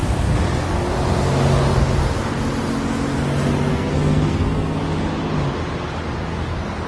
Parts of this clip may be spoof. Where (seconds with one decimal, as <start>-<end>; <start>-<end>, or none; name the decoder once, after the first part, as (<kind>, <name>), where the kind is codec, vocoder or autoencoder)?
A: 3.7-4.8 (codec, SNAC)